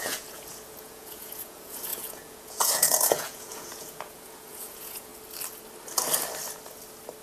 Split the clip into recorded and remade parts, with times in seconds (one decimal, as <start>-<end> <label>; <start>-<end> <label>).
0.0-5.1 remade; 5.1-7.2 recorded